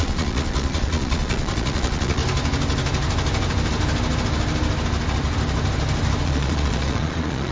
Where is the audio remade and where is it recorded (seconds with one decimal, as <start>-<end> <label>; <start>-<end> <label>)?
0.0-2.2 remade; 2.2-6.2 recorded; 6.2-7.5 remade